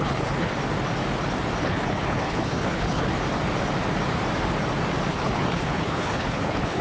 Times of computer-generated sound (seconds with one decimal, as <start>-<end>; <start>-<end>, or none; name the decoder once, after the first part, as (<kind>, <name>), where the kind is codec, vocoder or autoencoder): 0.0-0.5 (codec, HILCodec); 1.6-3.1; 5.1-6.8